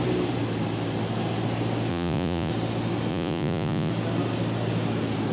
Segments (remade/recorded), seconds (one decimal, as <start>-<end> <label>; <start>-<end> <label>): 0.0-1.9 recorded; 1.9-2.5 remade; 2.5-3.1 recorded; 3.1-3.9 remade; 3.9-5.3 recorded